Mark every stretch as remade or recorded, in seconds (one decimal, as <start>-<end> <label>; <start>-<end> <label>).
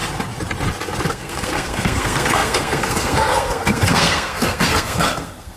0.0-1.1 recorded; 1.1-5.6 remade